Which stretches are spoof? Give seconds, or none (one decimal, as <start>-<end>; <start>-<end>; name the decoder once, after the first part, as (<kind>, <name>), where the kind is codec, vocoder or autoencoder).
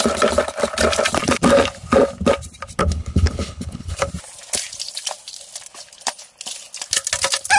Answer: 2.8-4.1 (codec, HILCodec)